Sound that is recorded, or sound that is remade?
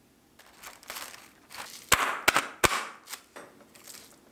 recorded